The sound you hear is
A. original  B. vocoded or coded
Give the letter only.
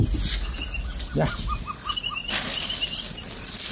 A